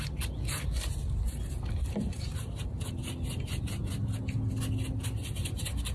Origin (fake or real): real